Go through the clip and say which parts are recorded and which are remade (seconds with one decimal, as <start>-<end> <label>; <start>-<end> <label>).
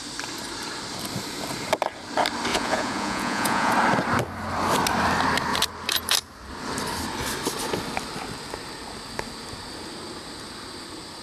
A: 0.0-2.5 recorded; 2.5-3.7 remade; 3.7-11.2 recorded